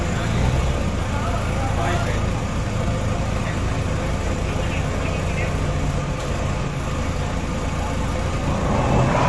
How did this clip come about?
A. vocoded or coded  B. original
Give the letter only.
B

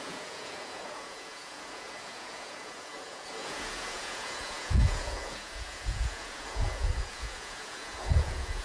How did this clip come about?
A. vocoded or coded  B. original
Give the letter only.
A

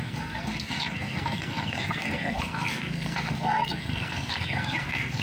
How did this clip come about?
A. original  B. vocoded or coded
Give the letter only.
B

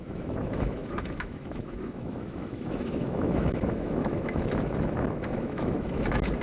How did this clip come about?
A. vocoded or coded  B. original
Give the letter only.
A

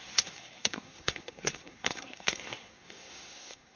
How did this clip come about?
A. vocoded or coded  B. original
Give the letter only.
A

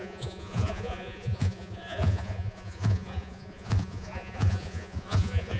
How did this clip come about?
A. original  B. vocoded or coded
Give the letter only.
B